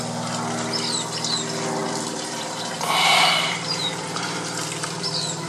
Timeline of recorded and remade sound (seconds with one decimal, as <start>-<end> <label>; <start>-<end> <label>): 0.0-1.8 recorded; 1.8-5.1 remade; 5.1-5.5 recorded